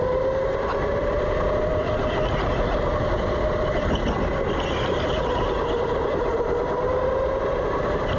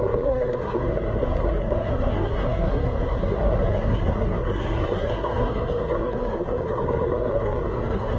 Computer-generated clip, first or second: second